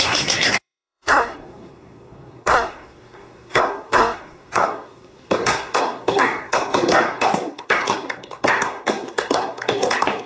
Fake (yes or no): yes